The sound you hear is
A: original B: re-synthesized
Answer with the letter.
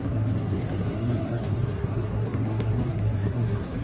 B